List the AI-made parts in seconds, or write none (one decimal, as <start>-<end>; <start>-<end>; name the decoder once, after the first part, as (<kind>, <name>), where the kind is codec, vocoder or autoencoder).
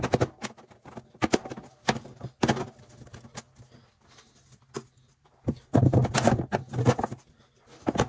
none